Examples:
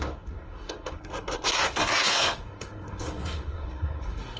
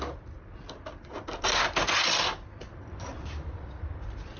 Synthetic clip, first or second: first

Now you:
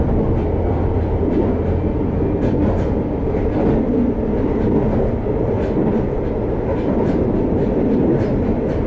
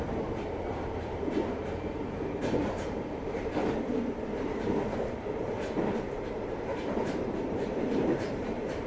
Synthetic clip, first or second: second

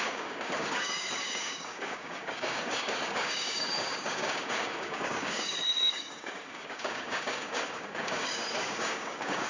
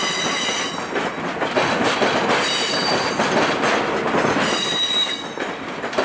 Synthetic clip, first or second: first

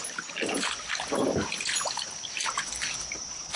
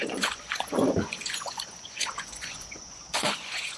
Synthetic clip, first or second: second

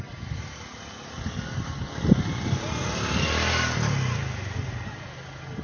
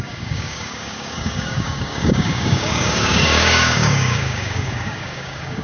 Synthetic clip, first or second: second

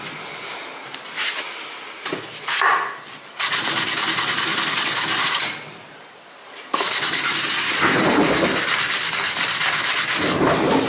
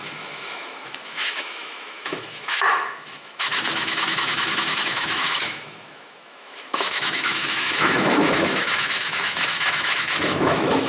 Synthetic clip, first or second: second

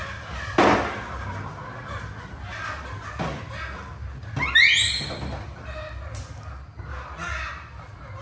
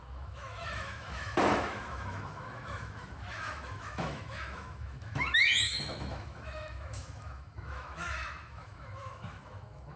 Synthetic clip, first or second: second